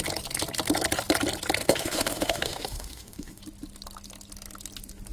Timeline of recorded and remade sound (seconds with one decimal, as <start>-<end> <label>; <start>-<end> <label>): 0.0-1.6 recorded; 1.6-3.4 remade; 3.4-5.1 recorded